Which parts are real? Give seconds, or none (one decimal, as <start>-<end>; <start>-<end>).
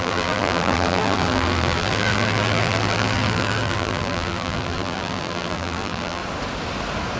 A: 6.2-7.2